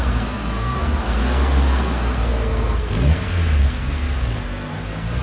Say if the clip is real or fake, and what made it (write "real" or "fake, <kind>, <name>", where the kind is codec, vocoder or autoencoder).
fake, codec, SNAC